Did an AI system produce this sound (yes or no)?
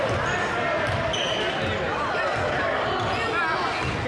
no